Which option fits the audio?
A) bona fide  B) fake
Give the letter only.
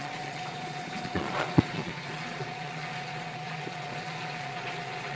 B